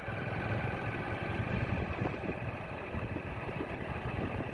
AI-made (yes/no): no